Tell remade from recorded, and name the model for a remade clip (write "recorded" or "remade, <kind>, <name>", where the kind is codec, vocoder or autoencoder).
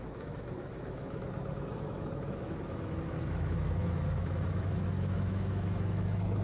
remade, autoencoder, DAC-VAE